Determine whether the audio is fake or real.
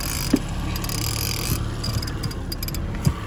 real